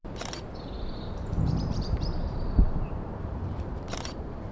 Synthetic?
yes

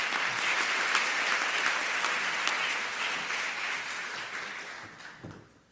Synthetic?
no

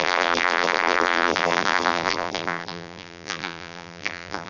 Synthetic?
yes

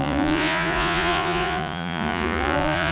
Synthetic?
yes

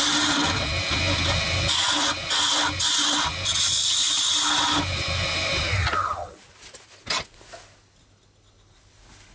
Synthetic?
no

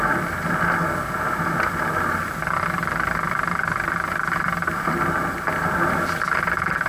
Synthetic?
no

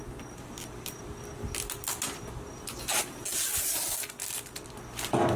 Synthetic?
no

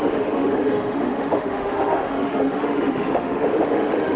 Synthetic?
yes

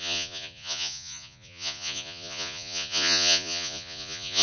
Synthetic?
yes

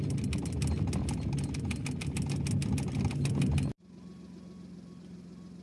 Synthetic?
no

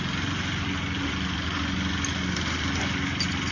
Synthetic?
no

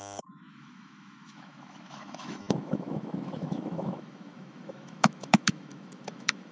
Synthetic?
yes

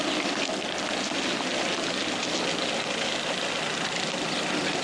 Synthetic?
no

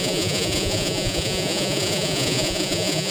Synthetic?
yes